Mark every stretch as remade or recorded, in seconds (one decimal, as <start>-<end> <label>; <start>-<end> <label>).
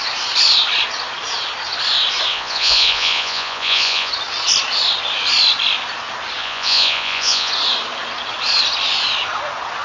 0.0-2.3 recorded; 2.3-4.1 remade; 4.1-6.4 recorded; 6.4-7.5 remade; 7.5-9.8 recorded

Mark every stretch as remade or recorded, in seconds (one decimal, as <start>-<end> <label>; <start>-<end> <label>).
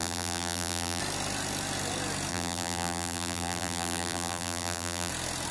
0.0-1.0 remade; 1.0-2.3 recorded; 2.3-5.1 remade; 5.1-5.5 recorded